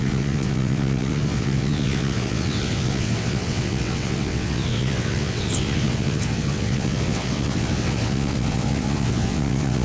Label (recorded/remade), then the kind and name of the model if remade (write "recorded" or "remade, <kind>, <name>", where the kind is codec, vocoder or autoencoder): remade, vocoder, WaveNeXt